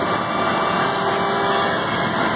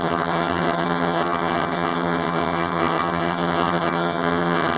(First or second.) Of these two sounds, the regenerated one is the second